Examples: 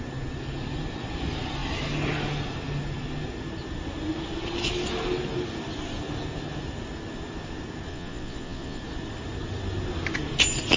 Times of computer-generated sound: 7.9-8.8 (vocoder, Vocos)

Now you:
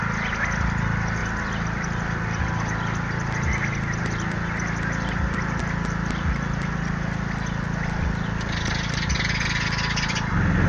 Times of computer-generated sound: none

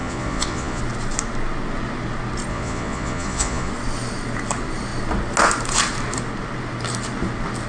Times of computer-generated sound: 0.0-0.8 (vocoder, Vocos); 2.5-3.7

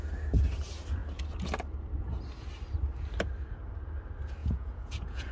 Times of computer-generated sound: 4.4-5.3 (vocoder, Vocos)

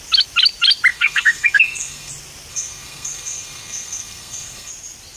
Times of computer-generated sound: 0.9-2.1 (codec, SNAC); 2.5-4.7